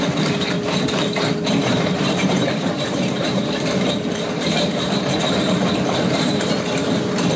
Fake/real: fake